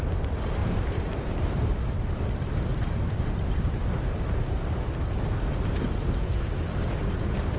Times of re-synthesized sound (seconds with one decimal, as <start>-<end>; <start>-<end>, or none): 0.6-1.6; 2.7-4.0

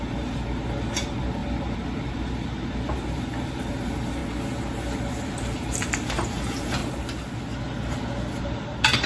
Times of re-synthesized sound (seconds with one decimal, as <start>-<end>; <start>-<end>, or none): 0.0-4.2; 5.3-6.8; 8.4-9.1

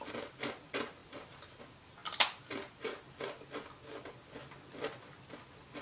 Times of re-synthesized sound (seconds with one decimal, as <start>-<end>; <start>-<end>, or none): 1.0-1.6

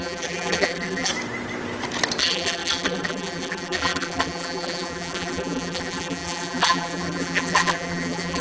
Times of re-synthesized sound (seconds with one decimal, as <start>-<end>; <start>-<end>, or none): 0.0-1.1; 2.2-8.4

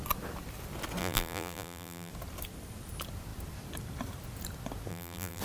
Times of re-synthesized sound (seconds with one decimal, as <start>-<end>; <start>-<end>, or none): 1.0-2.1; 4.9-5.4